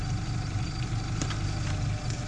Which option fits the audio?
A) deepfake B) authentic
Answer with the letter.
A